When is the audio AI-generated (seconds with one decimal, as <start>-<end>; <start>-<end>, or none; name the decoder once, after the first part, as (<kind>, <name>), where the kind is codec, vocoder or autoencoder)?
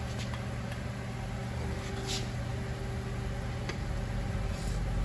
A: none